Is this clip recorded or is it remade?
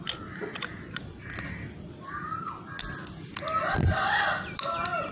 remade